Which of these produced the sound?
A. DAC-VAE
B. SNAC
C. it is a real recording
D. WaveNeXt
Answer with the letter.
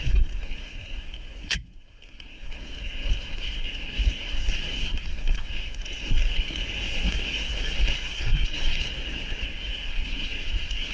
B